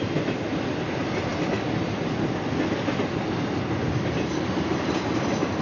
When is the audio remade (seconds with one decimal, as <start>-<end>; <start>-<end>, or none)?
none